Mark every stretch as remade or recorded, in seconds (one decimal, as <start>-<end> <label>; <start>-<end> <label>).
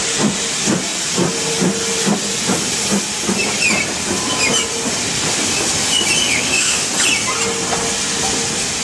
0.0-6.2 recorded; 6.2-6.9 remade; 6.9-8.8 recorded